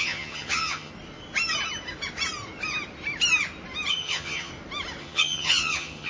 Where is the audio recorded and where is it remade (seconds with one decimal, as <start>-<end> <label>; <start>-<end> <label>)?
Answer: 0.0-0.9 remade; 0.9-3.9 recorded; 3.9-4.5 remade; 4.5-5.0 recorded; 5.0-6.1 remade